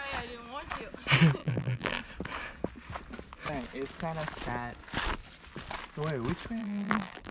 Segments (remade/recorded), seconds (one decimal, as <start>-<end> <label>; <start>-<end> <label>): 0.0-1.4 recorded; 1.4-2.0 remade; 2.0-6.6 recorded; 6.6-7.3 remade